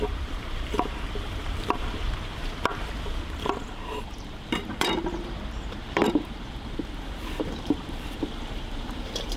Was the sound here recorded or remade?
remade